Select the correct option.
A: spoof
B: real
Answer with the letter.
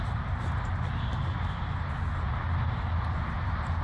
B